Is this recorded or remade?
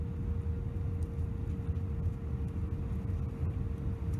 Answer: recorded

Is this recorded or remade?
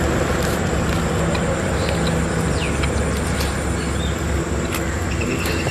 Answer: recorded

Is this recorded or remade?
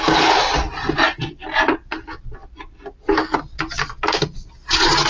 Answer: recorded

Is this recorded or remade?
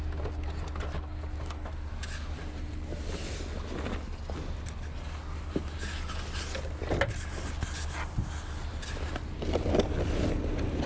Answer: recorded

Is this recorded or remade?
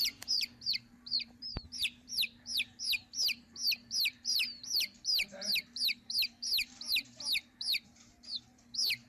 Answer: remade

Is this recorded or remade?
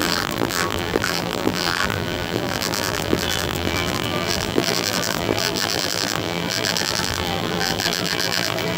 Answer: remade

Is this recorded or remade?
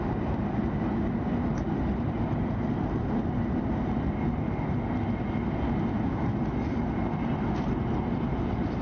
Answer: recorded